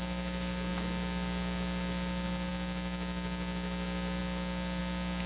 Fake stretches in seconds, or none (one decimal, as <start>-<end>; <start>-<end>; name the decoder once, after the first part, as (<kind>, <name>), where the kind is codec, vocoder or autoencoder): none